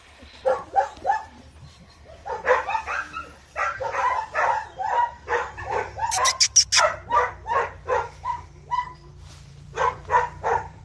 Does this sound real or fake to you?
fake